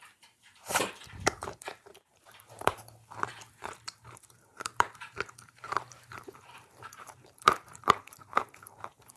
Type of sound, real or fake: fake